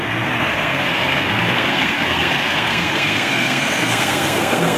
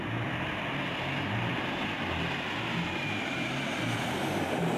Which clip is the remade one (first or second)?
first